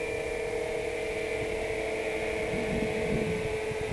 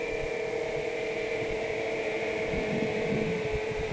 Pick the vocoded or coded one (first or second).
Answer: second